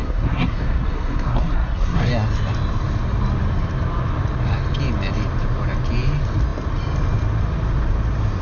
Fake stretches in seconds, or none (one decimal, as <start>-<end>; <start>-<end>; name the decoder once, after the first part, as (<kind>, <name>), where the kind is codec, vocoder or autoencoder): 0.0-2.1 (codec, SNAC)